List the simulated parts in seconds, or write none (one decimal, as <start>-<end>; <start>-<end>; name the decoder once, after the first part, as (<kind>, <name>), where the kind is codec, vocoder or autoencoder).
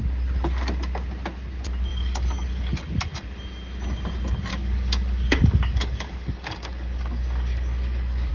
1.9-2.8 (codec, DAC); 4.5-8.3